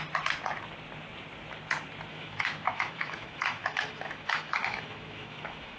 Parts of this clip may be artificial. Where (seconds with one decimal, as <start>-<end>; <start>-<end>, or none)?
2.1-5.8